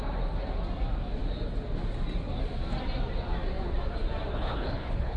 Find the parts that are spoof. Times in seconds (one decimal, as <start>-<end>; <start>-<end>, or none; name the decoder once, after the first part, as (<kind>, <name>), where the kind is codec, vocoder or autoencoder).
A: 4.3-5.2 (codec, HILCodec)